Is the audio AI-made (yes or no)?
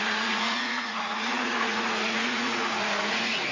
yes